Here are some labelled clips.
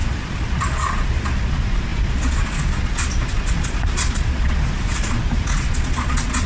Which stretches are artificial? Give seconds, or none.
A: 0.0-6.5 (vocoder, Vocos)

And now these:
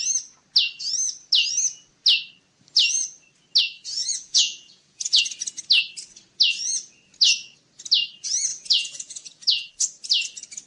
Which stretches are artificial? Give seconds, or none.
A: 4.0-5.2 (vocoder, Vocos); 8.5-9.7

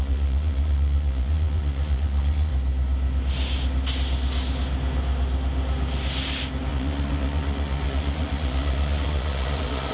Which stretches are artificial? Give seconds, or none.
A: 0.0-2.5 (vocoder, Vocos); 6.7-9.9